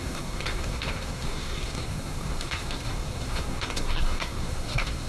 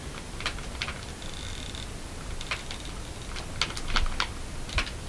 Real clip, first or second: second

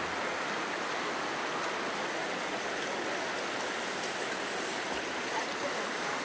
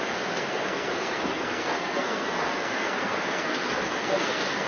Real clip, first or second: first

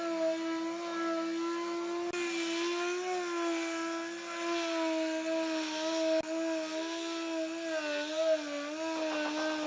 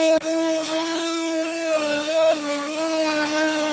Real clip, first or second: first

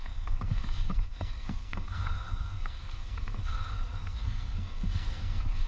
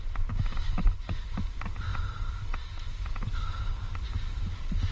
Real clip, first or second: second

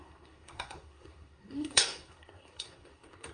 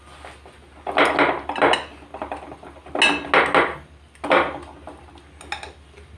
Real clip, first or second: second